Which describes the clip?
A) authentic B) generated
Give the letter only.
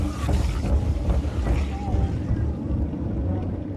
A